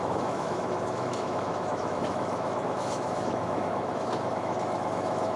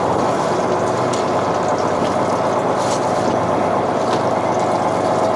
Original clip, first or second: second